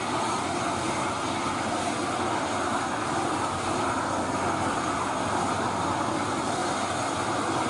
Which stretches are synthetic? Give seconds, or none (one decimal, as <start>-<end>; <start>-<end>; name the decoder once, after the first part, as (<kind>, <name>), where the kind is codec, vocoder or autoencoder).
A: none